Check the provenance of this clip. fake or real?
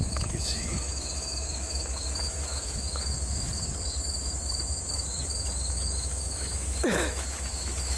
fake